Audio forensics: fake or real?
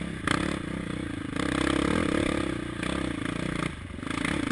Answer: real